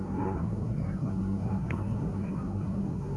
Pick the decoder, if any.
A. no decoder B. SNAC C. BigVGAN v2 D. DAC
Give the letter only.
B